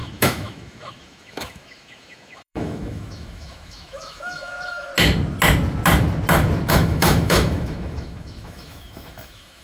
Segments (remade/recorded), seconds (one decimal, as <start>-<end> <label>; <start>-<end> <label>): 0.0-4.9 remade; 4.9-6.7 recorded; 6.7-9.6 remade

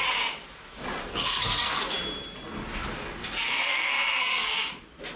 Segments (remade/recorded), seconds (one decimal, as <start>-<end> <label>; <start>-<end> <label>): 0.0-1.0 recorded; 1.0-1.8 remade; 1.8-3.2 recorded; 3.2-4.7 remade; 4.7-5.2 recorded

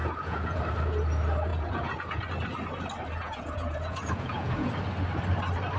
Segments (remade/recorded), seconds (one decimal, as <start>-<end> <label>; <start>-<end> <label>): 0.0-0.6 remade; 0.6-1.5 recorded; 1.5-2.3 remade; 2.3-3.2 recorded; 3.2-4.7 remade; 4.7-5.8 recorded

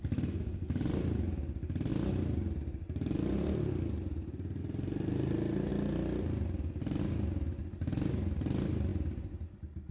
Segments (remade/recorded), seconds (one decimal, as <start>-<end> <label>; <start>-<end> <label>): 0.0-9.9 recorded

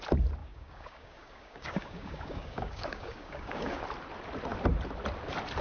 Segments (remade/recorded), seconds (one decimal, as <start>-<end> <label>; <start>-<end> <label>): 0.0-0.4 recorded; 0.4-3.8 remade; 3.8-5.6 recorded

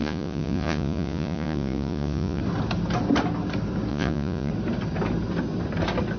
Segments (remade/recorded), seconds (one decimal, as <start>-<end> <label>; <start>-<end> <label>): 0.0-2.4 remade; 2.4-3.9 recorded; 3.9-4.5 remade; 4.5-6.2 recorded

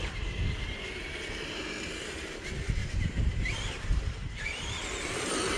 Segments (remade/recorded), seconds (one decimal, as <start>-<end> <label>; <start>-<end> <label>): 0.0-2.8 recorded; 2.8-3.8 remade; 3.8-5.6 recorded